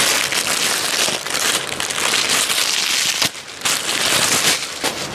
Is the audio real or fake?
real